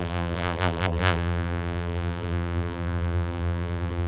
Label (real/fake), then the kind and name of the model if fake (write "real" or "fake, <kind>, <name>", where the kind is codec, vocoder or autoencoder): fake, vocoder, BigVGAN v2